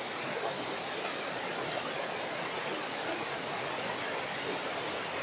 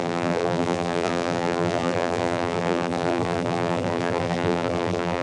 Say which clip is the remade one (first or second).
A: second